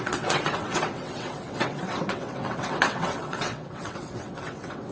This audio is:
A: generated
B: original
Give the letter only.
A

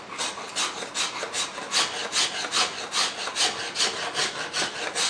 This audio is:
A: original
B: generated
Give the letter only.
A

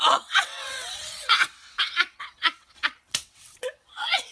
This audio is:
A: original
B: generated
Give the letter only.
B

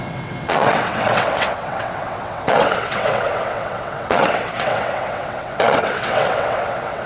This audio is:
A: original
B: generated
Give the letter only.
B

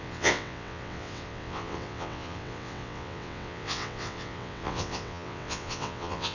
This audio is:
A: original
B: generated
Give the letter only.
B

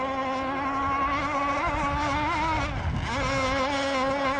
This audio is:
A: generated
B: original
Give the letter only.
B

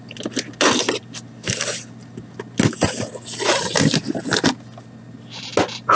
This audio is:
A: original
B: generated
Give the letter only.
A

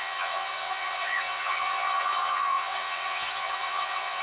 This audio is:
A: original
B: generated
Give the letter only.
B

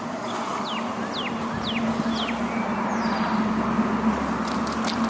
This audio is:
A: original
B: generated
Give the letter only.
A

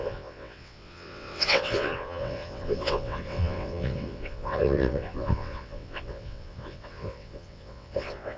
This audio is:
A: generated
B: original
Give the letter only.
A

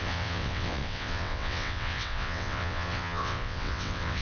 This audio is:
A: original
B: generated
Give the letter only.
B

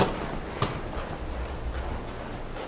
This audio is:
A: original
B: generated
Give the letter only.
A